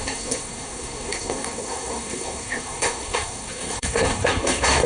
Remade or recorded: remade